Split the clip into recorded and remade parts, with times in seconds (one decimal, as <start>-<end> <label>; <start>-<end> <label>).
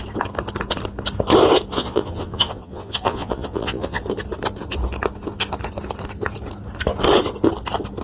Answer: 0.0-1.7 recorded; 1.7-4.0 remade; 4.0-8.0 recorded